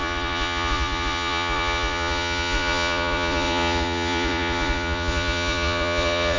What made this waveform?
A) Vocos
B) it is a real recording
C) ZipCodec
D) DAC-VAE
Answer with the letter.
A